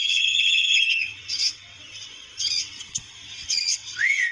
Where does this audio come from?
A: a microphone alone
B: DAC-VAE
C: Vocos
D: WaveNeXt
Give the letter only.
D